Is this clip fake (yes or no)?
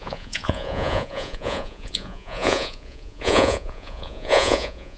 yes